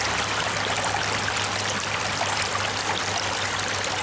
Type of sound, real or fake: real